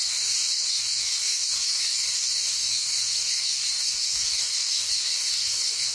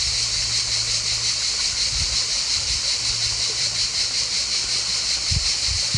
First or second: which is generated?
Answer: first